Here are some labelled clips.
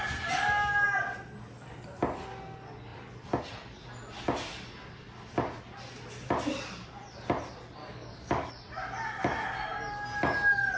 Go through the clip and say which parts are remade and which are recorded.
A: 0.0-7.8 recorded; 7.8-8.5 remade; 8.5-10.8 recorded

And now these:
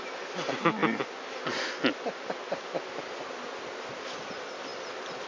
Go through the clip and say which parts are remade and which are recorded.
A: 0.0-5.3 recorded

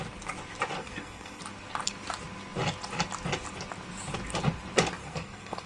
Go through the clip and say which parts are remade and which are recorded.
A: 0.0-0.8 recorded; 0.8-1.4 remade; 1.4-5.0 recorded; 5.0-5.7 remade

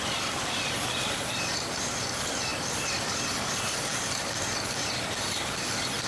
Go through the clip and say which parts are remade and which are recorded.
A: 0.0-6.1 recorded

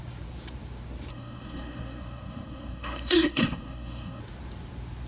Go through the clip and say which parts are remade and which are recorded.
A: 0.0-1.1 recorded; 1.1-4.2 remade; 4.2-5.1 recorded